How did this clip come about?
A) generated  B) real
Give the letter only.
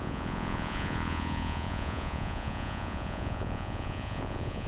A